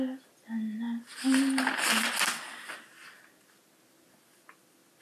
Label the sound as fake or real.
real